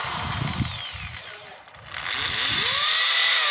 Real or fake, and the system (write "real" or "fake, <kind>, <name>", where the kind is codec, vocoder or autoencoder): real